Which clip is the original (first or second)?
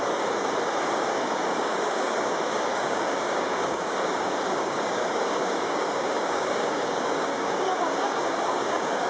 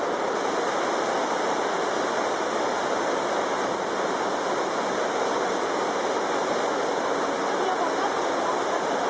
second